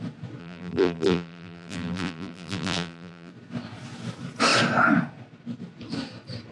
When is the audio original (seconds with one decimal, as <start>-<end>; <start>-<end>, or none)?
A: 0.0-0.4; 3.3-6.5